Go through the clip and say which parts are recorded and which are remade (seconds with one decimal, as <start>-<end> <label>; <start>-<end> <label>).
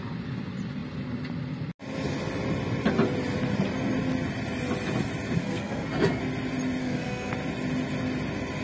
0.0-5.4 recorded; 5.4-6.2 remade; 6.2-6.8 recorded; 6.8-7.3 remade; 7.3-8.6 recorded